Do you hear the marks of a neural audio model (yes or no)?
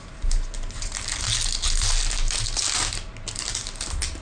no